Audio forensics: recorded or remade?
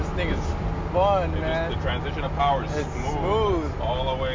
recorded